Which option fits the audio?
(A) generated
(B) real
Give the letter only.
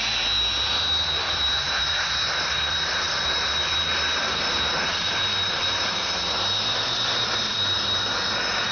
B